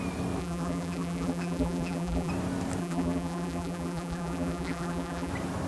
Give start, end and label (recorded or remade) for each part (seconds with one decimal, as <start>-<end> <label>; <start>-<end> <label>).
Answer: 0.0-0.4 recorded; 0.4-2.3 remade; 2.3-2.8 recorded; 2.8-5.3 remade; 5.3-5.7 recorded